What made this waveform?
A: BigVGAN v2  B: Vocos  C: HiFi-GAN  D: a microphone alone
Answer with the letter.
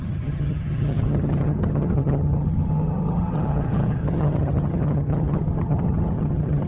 C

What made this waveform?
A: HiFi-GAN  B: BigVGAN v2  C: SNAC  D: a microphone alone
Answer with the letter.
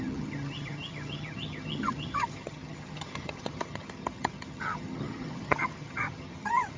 A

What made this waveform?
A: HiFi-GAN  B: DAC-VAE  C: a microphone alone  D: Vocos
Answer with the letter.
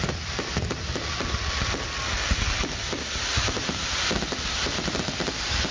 C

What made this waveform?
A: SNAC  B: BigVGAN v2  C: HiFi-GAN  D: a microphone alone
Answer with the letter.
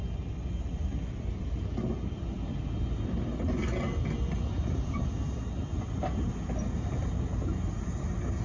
D